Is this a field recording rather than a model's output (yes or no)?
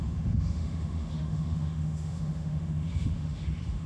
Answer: no